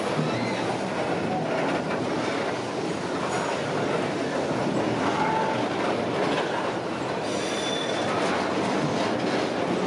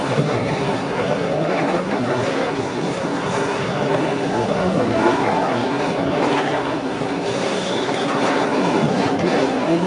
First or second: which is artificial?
second